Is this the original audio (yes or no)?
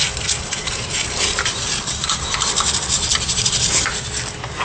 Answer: yes